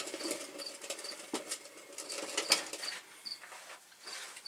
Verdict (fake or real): real